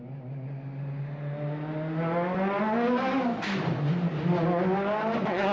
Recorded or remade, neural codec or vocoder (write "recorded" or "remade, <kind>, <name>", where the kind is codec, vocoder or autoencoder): recorded